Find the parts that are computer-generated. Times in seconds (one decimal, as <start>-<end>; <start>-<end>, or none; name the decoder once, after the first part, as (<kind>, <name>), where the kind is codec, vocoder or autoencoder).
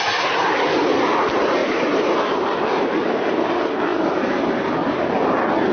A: 1.6-2.6 (vocoder, BigVGAN v2); 3.9-5.0